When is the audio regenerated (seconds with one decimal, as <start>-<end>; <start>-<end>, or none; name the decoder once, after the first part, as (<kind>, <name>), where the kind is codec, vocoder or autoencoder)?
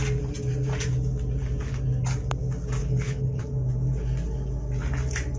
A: 2.8-3.4 (codec, HILCodec)